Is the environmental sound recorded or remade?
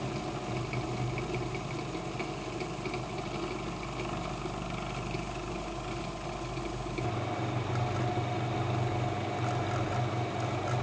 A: recorded